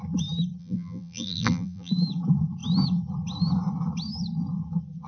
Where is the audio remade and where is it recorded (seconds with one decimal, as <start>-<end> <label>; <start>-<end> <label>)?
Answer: 0.0-0.6 recorded; 0.6-1.9 remade; 1.9-5.1 recorded